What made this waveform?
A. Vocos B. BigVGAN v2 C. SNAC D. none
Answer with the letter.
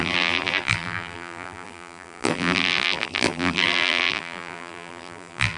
B